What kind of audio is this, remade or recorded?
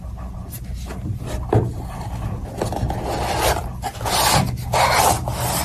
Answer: recorded